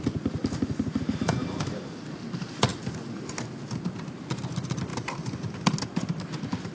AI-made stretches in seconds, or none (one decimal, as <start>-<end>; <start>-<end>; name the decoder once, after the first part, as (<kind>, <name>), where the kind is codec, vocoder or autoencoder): none